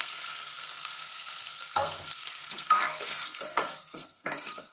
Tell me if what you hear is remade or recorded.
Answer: remade